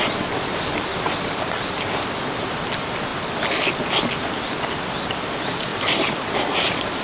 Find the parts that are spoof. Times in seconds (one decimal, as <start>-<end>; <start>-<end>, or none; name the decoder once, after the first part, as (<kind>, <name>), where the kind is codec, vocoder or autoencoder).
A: 0.0-3.1 (vocoder, BigVGAN v2); 5.2-5.7; 6.5-7.0